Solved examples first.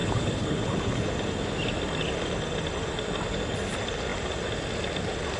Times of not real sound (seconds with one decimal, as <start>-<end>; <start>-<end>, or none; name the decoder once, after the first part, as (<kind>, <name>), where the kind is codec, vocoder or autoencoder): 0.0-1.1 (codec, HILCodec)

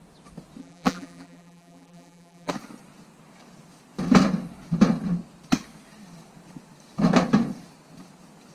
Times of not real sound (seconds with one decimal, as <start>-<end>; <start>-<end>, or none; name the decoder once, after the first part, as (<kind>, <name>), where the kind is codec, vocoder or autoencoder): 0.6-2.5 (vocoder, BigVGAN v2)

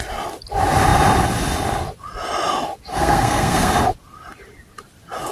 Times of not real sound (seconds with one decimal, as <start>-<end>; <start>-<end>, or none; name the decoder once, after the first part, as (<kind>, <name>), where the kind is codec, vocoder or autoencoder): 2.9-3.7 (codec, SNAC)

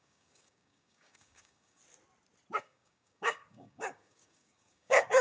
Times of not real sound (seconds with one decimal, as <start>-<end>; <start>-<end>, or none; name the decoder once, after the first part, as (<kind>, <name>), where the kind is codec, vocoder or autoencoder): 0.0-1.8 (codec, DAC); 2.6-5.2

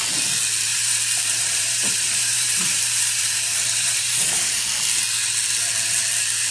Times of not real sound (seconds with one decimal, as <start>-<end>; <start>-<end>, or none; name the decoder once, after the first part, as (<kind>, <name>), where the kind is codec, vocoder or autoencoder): 0.7-4.6 (vocoder, BigVGAN v2)

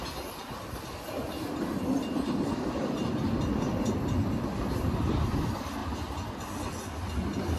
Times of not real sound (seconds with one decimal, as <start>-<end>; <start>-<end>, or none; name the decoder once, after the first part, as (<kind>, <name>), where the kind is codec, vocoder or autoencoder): none

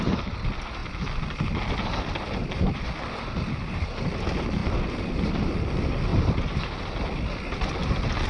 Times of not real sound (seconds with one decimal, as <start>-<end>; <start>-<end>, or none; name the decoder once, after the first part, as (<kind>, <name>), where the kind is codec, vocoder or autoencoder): none